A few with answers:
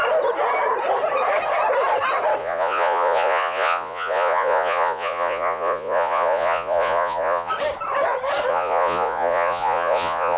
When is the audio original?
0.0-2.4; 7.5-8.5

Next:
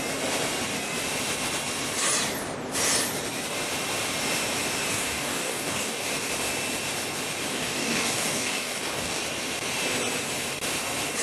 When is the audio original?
0.0-4.9; 6.3-7.5; 9.2-11.2

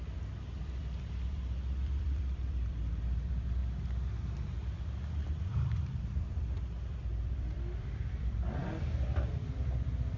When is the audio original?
3.6-4.5; 8.6-9.1

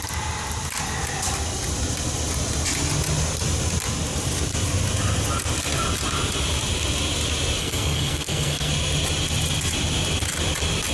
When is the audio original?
0.0-7.6; 8.7-10.9

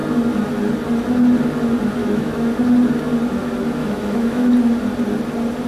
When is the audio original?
0.0-2.0; 2.6-3.8; 4.5-5.7

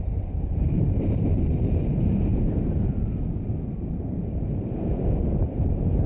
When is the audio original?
2.3-3.9

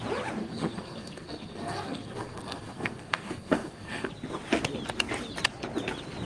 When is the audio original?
0.0-0.4; 4.1-6.2

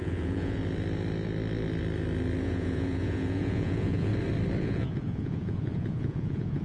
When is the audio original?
0.6-2.4; 4.1-4.6